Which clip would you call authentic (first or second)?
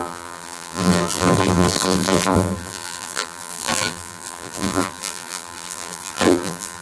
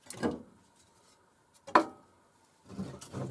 second